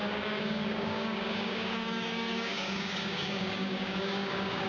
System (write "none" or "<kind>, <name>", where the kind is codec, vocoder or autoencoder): codec, DAC